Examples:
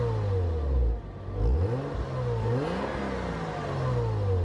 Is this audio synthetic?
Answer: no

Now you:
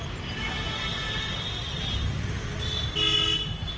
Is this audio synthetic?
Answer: no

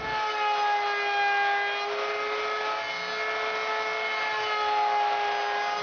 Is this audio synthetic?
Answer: no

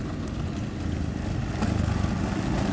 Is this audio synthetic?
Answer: no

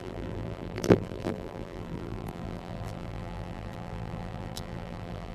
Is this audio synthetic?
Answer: yes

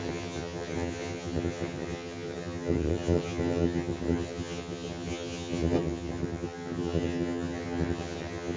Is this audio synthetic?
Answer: yes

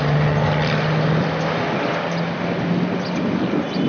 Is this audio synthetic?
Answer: no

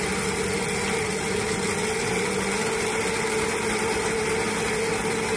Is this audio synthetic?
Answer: no